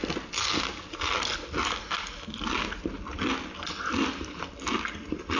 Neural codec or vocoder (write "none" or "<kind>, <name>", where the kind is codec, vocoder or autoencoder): none